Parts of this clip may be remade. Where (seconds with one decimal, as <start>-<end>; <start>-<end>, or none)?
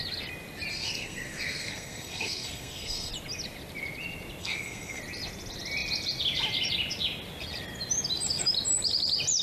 0.7-3.1; 4.4-5.0